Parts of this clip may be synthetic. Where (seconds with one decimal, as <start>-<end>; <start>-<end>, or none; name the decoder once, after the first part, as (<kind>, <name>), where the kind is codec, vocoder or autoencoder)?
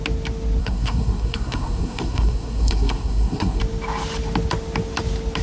0.6-3.6 (codec, SNAC)